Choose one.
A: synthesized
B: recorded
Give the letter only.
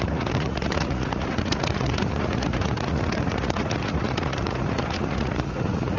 A